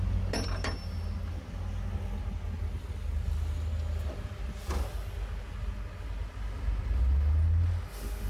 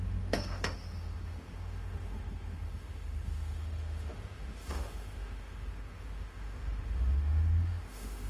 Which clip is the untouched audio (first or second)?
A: first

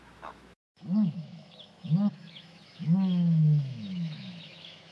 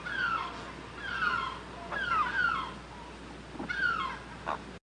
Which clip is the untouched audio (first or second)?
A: second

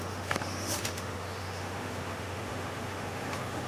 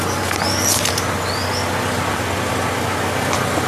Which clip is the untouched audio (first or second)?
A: second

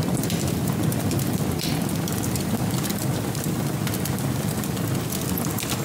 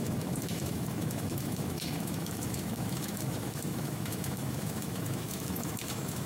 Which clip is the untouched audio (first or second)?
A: first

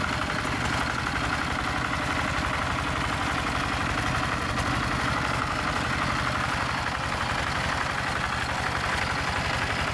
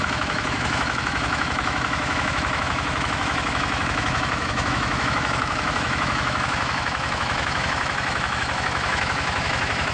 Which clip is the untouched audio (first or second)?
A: first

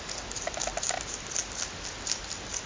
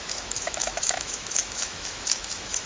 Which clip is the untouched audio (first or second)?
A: first